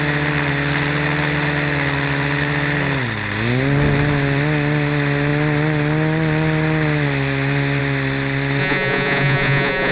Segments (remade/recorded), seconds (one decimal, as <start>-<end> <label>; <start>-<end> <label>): 0.0-8.6 recorded; 8.6-9.9 remade